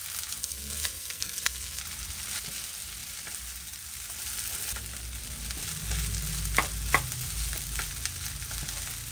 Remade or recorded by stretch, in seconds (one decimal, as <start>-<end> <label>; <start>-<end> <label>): 0.0-0.4 recorded; 0.4-1.8 remade; 1.8-9.1 recorded